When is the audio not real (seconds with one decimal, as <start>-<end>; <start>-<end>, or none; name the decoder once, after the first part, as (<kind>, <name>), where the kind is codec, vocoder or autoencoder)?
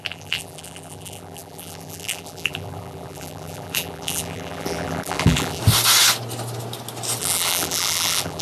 0.0-5.6 (vocoder, BigVGAN v2); 7.2-8.4